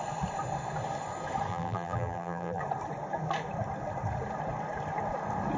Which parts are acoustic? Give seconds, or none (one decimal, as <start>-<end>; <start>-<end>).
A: 0.0-1.5; 2.6-5.6